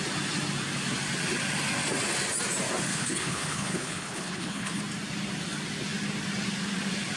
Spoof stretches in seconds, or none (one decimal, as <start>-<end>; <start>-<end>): 2.9-4.8